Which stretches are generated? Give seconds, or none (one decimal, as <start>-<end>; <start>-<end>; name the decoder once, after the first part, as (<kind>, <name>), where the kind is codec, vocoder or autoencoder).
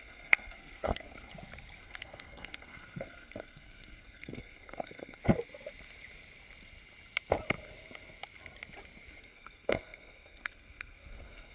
0.0-1.3 (codec, SNAC); 1.8-5.2; 9.2-11.5